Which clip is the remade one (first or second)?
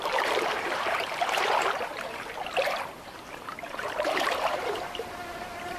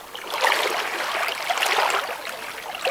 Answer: first